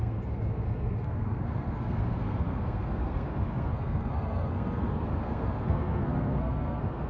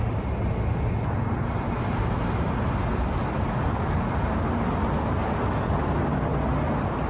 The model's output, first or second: first